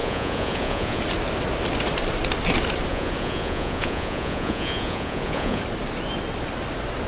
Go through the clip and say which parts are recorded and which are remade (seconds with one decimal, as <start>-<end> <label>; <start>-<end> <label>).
0.0-1.0 remade; 1.0-2.9 recorded; 2.9-5.6 remade; 5.6-7.1 recorded